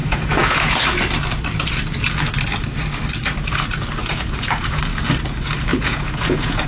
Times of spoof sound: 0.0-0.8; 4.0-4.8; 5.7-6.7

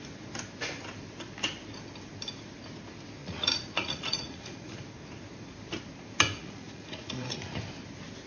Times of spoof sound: 3.2-4.8; 6.4-7.6